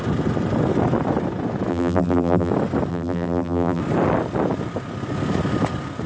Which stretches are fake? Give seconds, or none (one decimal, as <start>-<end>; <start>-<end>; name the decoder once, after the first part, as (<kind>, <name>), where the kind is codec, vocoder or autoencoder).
1.7-2.5 (vocoder, BigVGAN v2); 2.9-3.8